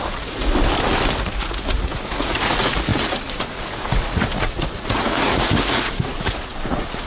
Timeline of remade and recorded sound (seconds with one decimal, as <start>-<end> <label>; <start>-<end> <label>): 0.0-0.5 remade; 0.5-1.2 recorded; 1.2-7.1 remade